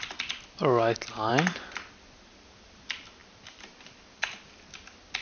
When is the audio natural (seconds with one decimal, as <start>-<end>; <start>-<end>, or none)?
0.0-3.2; 4.5-5.2